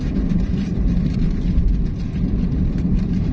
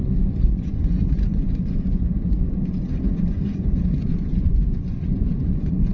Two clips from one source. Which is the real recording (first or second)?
first